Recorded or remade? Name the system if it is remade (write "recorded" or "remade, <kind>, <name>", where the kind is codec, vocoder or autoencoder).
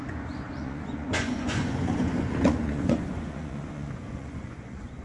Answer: remade, vocoder, Vocos